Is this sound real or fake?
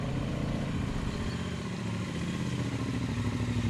fake